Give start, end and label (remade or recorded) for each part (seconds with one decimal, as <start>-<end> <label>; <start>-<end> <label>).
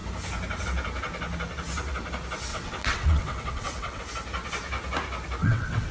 0.0-2.5 recorded; 2.5-4.0 remade; 4.0-5.4 recorded; 5.4-5.9 remade